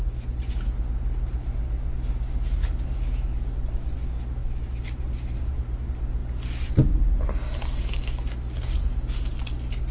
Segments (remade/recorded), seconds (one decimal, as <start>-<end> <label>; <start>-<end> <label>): 0.0-4.4 recorded; 4.4-5.0 remade; 5.0-9.9 recorded